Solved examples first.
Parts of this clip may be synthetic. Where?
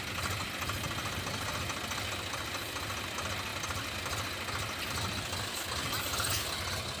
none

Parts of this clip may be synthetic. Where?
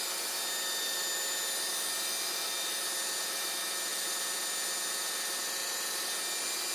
none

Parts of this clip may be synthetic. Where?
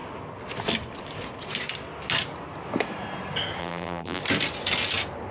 3.6-4.2 (vocoder, BigVGAN v2)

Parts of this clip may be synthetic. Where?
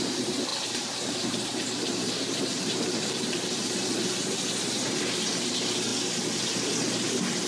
0.5-3.9 (vocoder, BigVGAN v2)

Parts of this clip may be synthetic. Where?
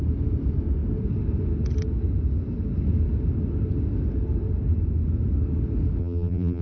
6.0-6.6 (vocoder, BigVGAN v2)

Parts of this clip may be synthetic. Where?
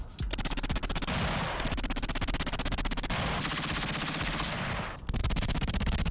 5.2-6.1 (vocoder, BigVGAN v2)